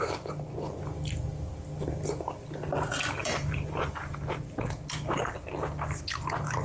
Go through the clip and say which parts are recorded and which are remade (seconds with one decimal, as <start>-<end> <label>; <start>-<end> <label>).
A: 0.0-3.2 recorded; 3.2-4.6 remade; 4.6-6.6 recorded